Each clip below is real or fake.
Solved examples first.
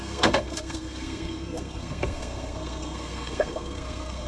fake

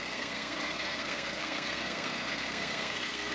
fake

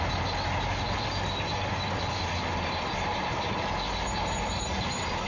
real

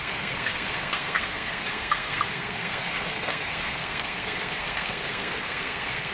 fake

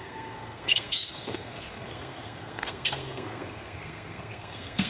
fake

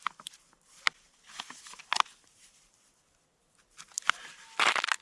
real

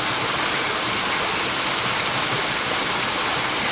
real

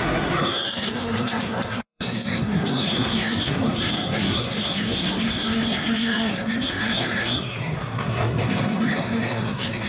fake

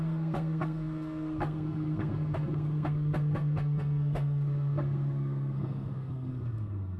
fake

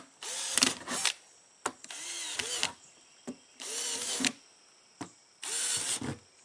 real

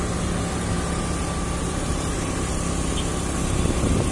real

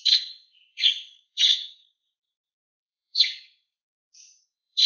fake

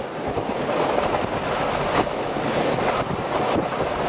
real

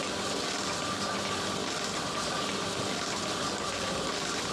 real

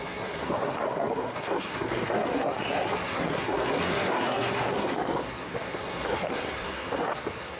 fake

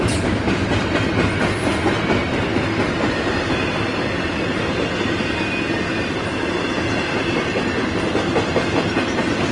real